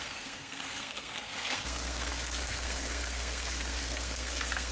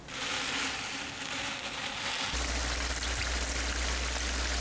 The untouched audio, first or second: second